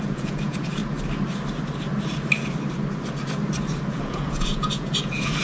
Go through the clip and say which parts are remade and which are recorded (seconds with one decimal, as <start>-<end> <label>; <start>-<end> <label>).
0.0-0.8 remade; 0.8-4.0 recorded; 4.0-5.4 remade